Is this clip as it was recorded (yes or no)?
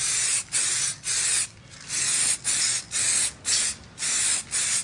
yes